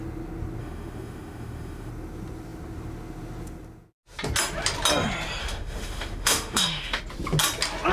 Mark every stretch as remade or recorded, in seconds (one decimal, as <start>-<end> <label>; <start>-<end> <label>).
0.0-0.6 recorded; 0.6-1.9 remade; 1.9-5.4 recorded; 5.4-7.0 remade; 7.0-7.9 recorded